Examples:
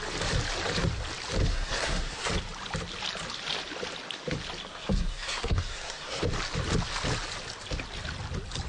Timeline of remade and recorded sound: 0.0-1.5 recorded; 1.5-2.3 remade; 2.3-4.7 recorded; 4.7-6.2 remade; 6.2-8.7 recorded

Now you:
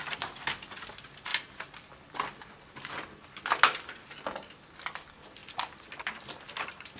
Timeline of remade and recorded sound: 0.0-7.0 recorded

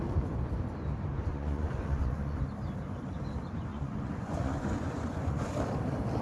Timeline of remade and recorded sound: 0.0-1.3 recorded; 1.3-2.4 remade; 2.4-3.7 recorded; 3.7-5.5 remade; 5.5-6.2 recorded

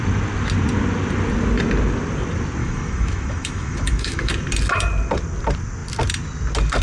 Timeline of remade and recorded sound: 0.0-2.6 recorded; 2.6-4.3 remade; 4.3-6.8 recorded